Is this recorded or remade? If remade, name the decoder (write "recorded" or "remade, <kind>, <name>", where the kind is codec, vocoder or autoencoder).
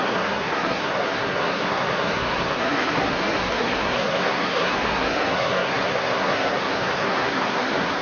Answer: remade, codec, SNAC